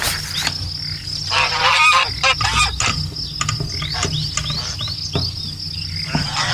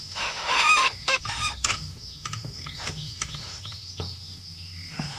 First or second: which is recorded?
first